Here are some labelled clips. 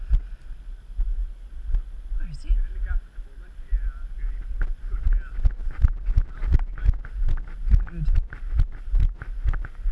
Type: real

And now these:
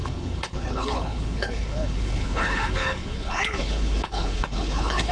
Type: fake